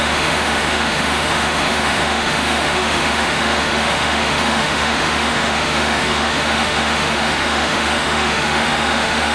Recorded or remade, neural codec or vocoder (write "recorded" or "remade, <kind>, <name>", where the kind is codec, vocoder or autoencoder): remade, autoencoder, DAC-VAE